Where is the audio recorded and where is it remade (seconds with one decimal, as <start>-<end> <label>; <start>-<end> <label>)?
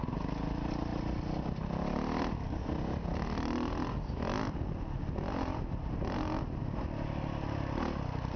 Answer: 0.0-8.4 recorded